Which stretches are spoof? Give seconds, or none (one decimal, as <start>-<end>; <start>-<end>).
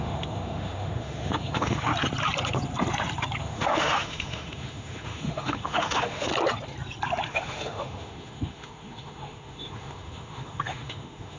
0.0-1.9; 3.4-6.3; 7.3-11.4